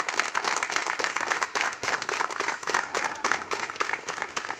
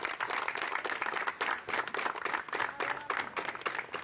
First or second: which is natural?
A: second